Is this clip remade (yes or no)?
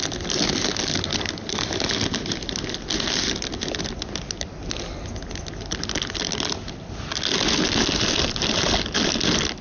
no